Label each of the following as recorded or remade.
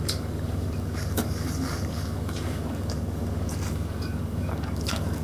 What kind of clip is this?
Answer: remade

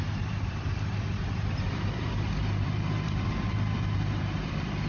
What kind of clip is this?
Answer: remade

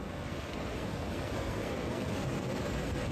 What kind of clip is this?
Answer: remade